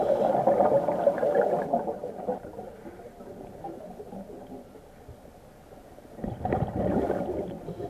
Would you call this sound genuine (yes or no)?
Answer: yes